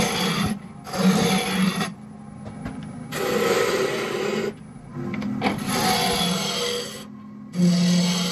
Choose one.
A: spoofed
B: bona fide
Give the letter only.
B